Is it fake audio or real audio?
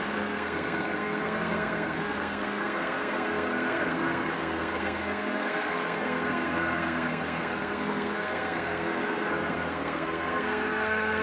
fake